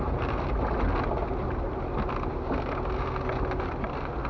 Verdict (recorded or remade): recorded